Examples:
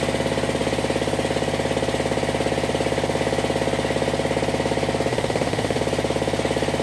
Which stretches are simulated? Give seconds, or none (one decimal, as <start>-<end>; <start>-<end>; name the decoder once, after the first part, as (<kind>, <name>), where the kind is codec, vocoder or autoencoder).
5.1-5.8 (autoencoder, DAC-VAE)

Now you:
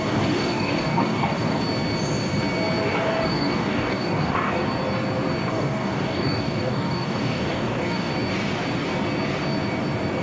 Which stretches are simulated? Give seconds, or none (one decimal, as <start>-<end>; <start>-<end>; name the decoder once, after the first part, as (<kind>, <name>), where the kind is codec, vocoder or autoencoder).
0.0-1.6 (codec, DAC); 3.0-4.6; 5.5-8.1

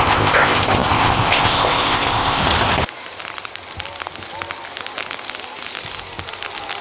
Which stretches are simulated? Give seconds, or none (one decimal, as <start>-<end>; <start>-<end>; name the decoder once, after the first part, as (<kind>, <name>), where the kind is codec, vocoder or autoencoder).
0.0-2.4 (codec, ZipCodec)

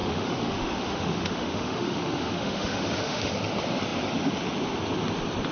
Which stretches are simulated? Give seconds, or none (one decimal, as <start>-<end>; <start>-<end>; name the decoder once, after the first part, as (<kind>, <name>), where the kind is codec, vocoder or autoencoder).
0.0-3.3 (autoencoder, DAC-VAE)

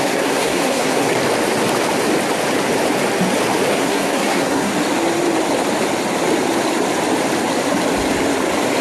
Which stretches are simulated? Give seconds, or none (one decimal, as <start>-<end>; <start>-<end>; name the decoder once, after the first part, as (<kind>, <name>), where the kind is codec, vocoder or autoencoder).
0.0-1.2 (codec, SNAC); 3.7-4.7